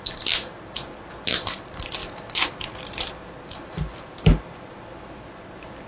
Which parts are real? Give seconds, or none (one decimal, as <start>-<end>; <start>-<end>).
0.0-5.9